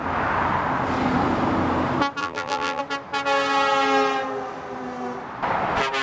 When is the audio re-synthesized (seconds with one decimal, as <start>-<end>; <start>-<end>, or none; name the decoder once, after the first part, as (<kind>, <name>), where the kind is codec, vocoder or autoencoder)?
2.2-2.8 (vocoder, BigVGAN v2)